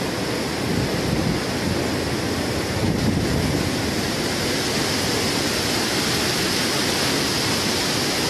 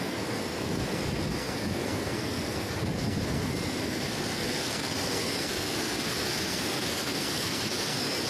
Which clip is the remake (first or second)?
second